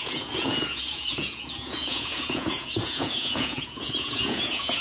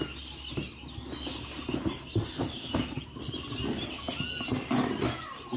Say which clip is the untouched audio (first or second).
second